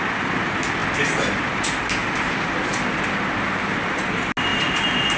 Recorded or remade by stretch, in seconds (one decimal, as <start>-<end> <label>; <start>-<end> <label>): 0.0-0.8 recorded; 0.8-1.5 remade; 1.5-2.0 recorded; 2.0-4.1 remade; 4.1-4.5 recorded; 4.5-5.2 remade